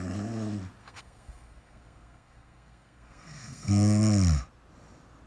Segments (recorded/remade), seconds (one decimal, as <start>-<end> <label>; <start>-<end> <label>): 0.0-0.8 recorded; 0.8-4.0 remade; 4.0-5.3 recorded